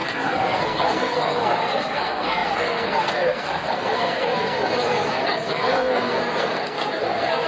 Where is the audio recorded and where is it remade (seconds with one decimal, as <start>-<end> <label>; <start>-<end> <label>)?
0.0-7.5 remade